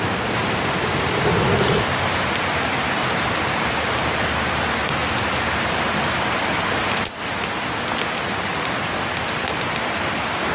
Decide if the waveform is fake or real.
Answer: real